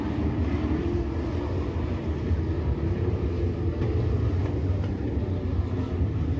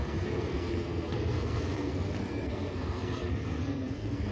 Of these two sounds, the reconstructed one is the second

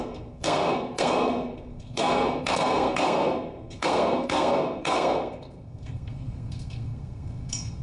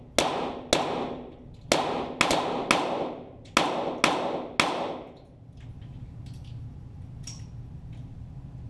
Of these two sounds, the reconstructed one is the first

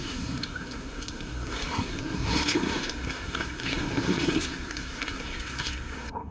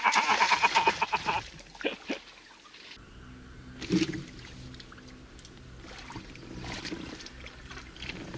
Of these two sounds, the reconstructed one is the first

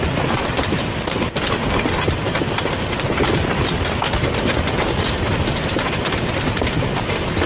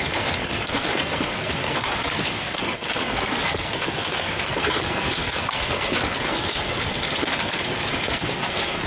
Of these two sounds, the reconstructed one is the second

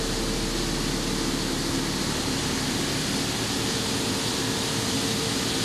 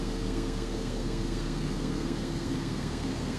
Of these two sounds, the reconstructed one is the second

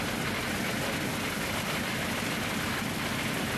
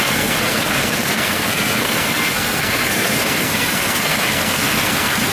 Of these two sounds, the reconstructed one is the second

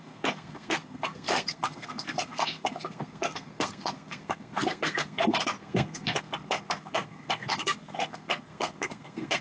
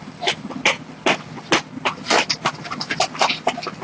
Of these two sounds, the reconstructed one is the first